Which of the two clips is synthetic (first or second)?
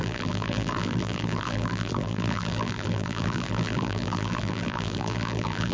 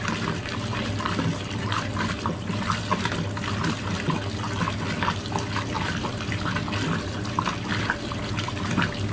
first